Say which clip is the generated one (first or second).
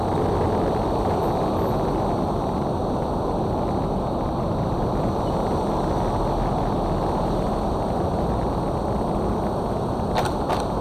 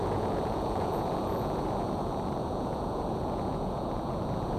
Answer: second